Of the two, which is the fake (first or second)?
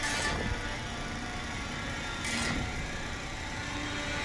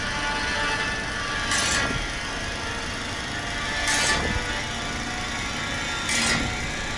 first